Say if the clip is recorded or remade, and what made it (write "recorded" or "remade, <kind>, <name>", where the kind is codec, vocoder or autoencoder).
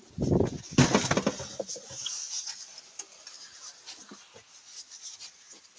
recorded